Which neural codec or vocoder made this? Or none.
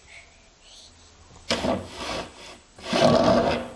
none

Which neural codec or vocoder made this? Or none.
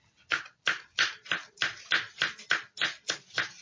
none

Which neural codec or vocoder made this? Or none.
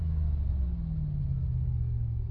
none